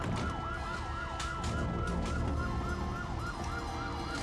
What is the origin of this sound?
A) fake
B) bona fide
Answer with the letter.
B